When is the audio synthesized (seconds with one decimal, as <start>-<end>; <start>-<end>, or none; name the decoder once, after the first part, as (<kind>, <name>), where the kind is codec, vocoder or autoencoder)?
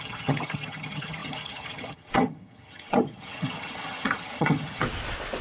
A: 0.0-4.8 (vocoder, HiFi-GAN)